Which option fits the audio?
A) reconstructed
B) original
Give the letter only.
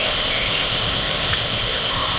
A